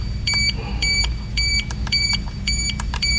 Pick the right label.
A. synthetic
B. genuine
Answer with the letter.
A